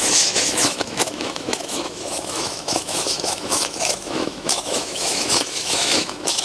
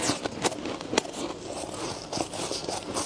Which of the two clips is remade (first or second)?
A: first